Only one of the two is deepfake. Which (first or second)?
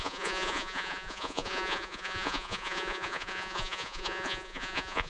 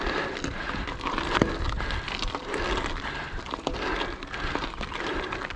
first